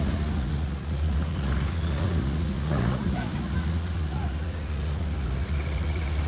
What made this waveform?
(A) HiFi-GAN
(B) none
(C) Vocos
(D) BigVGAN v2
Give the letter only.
C